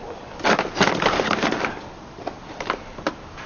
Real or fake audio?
real